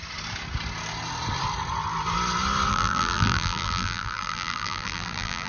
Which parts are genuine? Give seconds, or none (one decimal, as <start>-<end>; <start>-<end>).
0.0-2.7

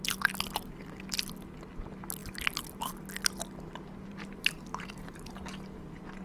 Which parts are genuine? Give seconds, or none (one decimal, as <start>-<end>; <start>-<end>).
0.0-4.1; 5.3-6.2

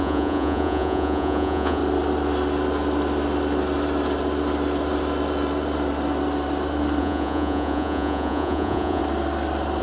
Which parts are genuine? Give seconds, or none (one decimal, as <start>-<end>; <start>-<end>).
1.8-7.0; 9.0-9.8

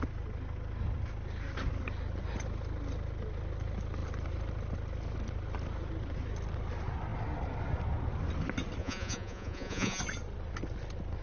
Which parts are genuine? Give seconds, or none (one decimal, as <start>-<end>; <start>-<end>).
0.0-8.8; 10.0-11.2